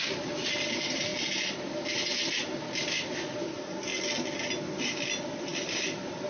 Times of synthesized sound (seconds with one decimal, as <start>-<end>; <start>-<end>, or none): 0.0-1.1; 2.8-3.9; 4.6-6.3